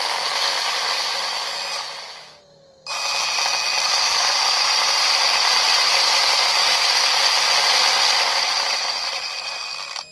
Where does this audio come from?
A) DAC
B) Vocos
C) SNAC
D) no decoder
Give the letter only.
D